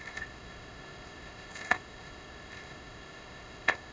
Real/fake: fake